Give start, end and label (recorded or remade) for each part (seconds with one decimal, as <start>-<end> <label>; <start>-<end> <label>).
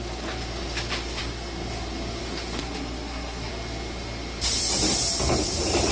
0.0-2.6 recorded; 2.6-3.5 remade; 3.5-5.9 recorded